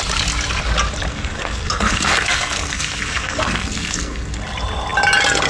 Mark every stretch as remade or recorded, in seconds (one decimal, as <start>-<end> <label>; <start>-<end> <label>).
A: 0.0-1.1 recorded; 1.1-4.4 remade; 4.4-5.5 recorded